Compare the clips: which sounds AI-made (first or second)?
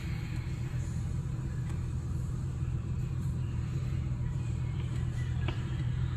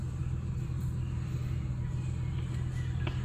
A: first